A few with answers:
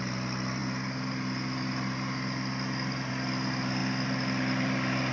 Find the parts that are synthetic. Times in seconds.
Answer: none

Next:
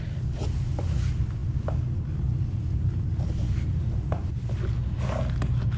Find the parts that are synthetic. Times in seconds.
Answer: none

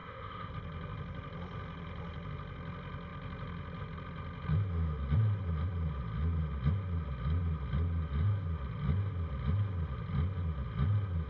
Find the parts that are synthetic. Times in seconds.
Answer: 0.0-0.5 (codec, ZipCodec)

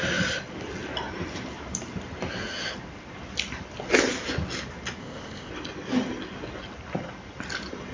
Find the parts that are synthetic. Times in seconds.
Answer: 5.0-5.5 (codec, ZipCodec)